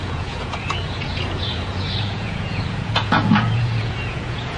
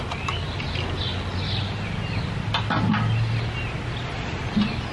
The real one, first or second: second